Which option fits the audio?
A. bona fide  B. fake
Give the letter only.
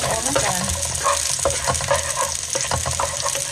A